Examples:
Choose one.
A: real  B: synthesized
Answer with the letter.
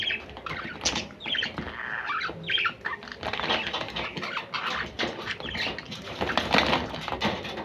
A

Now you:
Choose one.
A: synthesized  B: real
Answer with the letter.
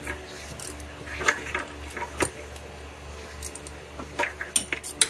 B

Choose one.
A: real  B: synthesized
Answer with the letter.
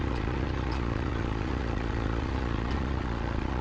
B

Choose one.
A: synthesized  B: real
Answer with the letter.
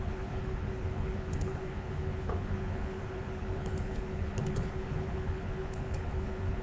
A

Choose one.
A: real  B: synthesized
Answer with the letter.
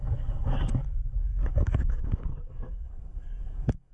B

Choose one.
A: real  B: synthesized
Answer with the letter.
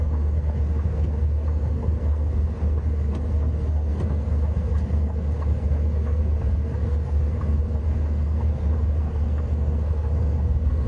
B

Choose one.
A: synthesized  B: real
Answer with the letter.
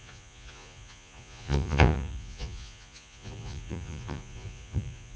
A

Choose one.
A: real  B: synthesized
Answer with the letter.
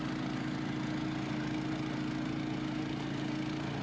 A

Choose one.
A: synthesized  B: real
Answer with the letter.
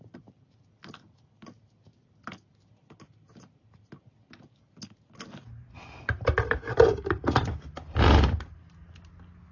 B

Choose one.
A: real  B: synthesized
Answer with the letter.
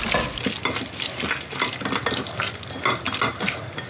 A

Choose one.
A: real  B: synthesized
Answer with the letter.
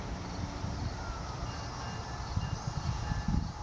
A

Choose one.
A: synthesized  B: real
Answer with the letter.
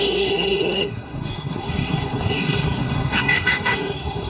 A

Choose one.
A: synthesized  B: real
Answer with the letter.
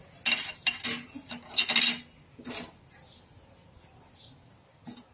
B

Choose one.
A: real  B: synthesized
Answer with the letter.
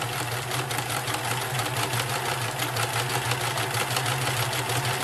A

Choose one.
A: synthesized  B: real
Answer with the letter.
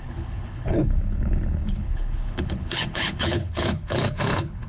A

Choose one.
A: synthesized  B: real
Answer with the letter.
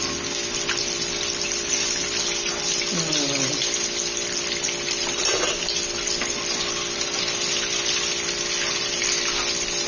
B